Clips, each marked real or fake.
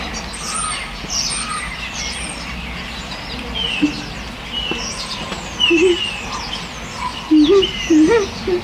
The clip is real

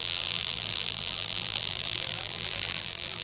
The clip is fake